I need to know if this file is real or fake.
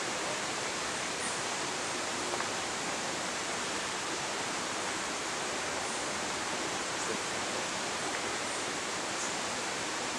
fake